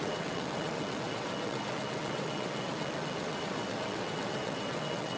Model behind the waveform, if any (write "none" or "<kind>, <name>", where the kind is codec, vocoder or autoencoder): vocoder, WaveNeXt